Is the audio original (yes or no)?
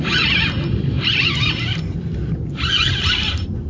yes